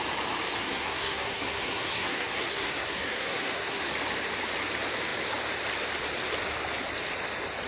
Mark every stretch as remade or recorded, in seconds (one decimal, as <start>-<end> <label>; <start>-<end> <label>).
0.0-0.6 recorded; 0.6-3.8 remade; 3.8-7.7 recorded